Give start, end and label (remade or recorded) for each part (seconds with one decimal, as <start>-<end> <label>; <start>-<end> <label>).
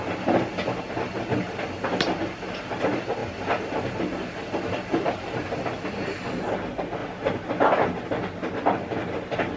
0.0-9.6 recorded